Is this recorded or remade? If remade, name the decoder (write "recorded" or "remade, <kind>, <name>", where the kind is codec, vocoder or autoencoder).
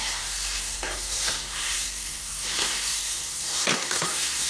remade, codec, SNAC